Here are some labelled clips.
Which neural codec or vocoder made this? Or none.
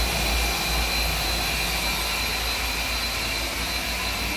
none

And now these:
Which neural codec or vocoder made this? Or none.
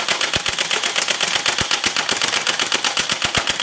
none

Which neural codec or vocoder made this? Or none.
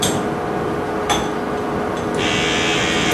none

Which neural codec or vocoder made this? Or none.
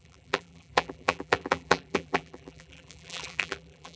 vocoder, BigVGAN v2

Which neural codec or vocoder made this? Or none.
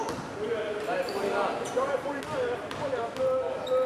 none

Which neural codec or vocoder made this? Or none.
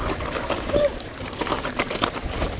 vocoder, BigVGAN v2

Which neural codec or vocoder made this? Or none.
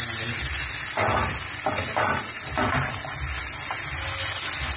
none